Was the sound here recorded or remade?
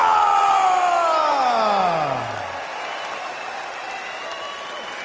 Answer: recorded